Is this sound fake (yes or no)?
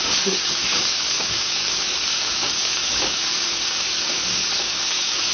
yes